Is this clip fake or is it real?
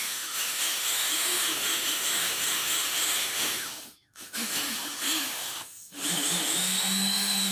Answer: fake